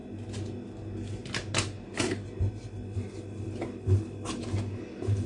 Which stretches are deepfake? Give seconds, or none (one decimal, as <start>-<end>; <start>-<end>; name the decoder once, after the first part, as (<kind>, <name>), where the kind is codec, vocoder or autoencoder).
none